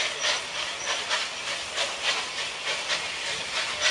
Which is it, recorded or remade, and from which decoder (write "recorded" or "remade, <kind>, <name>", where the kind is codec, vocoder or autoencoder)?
recorded